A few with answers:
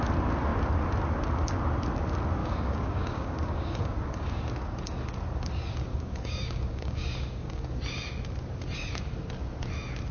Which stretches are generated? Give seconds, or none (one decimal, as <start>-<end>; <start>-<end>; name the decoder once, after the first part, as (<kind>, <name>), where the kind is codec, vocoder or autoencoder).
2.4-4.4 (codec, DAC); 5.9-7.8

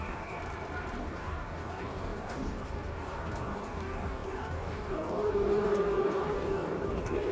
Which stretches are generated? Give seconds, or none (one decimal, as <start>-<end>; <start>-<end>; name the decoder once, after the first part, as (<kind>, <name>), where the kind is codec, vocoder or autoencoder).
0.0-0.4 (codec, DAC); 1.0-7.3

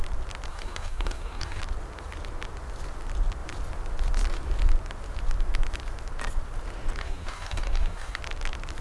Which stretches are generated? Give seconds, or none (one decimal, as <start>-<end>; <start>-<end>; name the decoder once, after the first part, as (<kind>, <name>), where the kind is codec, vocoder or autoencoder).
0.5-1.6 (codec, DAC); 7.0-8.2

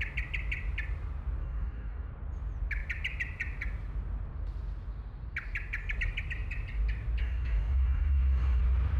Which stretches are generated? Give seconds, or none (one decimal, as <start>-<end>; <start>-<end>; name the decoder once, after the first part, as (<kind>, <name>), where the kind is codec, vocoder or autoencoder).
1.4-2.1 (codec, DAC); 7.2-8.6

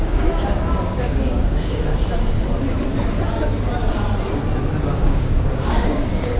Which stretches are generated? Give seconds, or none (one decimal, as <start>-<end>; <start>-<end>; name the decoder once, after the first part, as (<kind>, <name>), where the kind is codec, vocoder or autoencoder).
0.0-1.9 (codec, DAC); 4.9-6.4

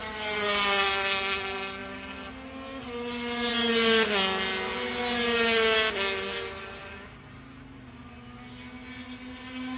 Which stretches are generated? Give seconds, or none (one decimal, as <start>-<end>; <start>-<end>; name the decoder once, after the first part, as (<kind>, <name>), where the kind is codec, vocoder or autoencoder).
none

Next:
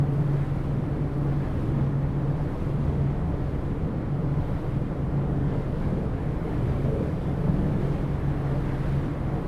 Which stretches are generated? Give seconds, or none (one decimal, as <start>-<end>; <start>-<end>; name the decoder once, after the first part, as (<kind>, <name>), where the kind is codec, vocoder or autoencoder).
5.4-7.8 (codec, DAC)